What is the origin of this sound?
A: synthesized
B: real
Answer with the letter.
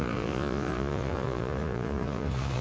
A